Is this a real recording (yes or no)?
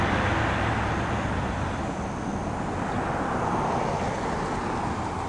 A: yes